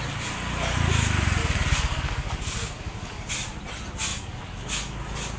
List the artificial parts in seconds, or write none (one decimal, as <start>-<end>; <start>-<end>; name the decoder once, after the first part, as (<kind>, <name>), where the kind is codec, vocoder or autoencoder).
1.4-3.3 (codec, DAC); 4.1-5.0